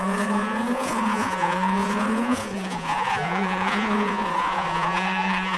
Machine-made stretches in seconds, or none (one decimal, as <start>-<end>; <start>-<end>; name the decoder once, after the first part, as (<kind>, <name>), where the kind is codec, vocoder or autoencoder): 0.0-5.6 (vocoder, Vocos)

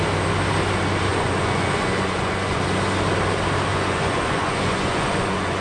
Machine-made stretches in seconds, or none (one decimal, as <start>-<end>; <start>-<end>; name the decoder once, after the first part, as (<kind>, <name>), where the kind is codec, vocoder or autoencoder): 1.1-2.7 (vocoder, Vocos); 3.7-5.6

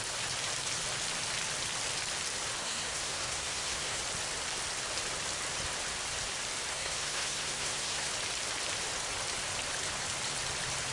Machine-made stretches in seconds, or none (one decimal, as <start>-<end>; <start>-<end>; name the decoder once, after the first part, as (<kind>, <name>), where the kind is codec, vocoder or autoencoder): 2.6-4.0 (codec, SNAC); 6.7-8.1

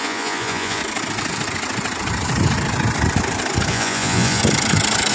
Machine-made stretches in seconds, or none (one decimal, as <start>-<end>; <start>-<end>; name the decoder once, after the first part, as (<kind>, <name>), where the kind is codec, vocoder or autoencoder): 0.0-0.8 (vocoder, Vocos); 3.7-4.4

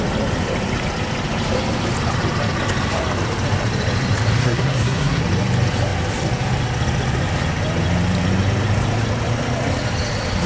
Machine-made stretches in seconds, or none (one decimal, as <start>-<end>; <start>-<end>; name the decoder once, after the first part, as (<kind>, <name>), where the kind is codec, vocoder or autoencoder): 4.4-5.2 (codec, SNAC)